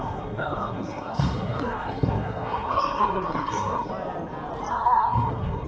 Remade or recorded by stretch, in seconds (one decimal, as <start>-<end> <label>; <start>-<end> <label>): 0.0-3.9 remade; 3.9-4.7 recorded; 4.7-5.7 remade